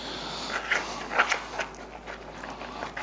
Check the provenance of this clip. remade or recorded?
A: recorded